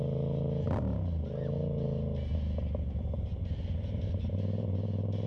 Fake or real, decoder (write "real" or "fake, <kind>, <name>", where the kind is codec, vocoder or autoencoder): real